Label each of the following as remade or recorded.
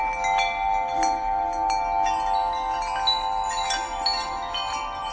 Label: recorded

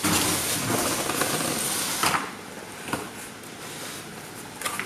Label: recorded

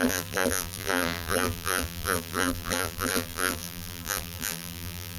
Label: remade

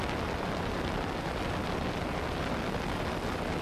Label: recorded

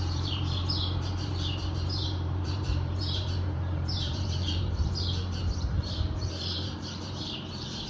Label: remade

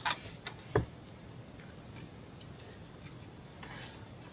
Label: recorded